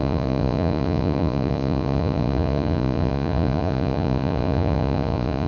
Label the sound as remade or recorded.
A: remade